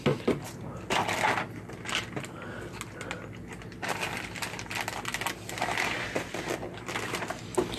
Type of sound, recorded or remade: recorded